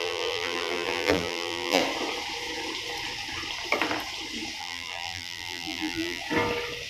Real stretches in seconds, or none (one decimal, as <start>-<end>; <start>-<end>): 1.8-4.6; 6.2-6.9

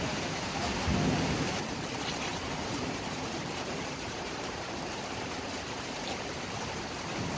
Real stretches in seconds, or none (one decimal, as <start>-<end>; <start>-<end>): 0.0-2.3; 6.7-7.4

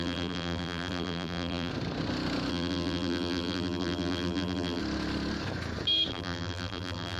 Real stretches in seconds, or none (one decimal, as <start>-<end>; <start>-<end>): 1.7-2.5; 4.8-6.1

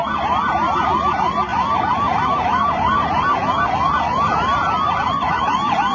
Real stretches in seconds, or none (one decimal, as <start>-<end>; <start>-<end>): 0.0-5.9

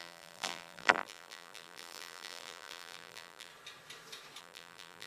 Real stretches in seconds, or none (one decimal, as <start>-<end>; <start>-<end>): 3.5-4.4

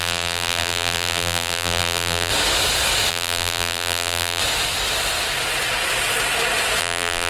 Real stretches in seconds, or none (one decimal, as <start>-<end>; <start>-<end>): 2.3-3.1; 4.4-6.8

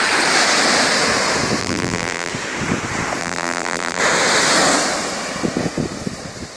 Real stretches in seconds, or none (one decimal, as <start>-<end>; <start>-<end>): 0.0-1.6; 2.3-3.2; 4.0-6.6

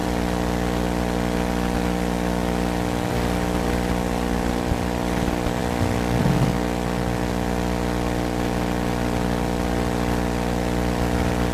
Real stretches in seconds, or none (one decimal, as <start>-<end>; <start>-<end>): 0.0-11.5